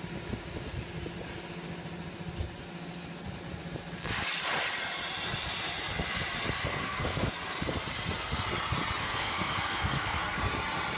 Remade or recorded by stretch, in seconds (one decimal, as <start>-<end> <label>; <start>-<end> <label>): 0.0-6.7 recorded; 6.7-7.3 remade; 7.3-9.0 recorded; 9.0-10.5 remade; 10.5-11.0 recorded